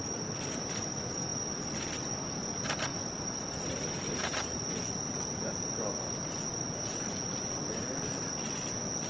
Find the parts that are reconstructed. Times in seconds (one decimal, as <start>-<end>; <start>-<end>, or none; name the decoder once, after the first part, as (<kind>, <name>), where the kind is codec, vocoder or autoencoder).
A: none